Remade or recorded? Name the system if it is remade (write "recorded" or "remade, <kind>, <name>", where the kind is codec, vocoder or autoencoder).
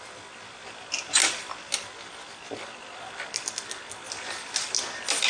recorded